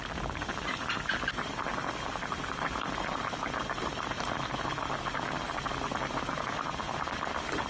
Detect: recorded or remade recorded